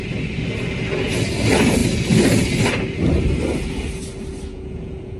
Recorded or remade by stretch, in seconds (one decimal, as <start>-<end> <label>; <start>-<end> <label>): 0.0-4.5 recorded; 4.5-5.2 remade